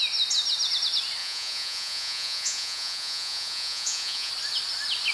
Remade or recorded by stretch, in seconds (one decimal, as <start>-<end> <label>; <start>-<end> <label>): 0.0-1.2 recorded; 1.2-4.3 remade; 4.3-5.1 recorded